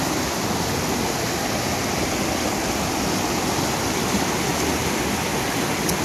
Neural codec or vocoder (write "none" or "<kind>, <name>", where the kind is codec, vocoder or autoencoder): none